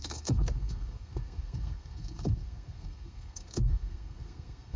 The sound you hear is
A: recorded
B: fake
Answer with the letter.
B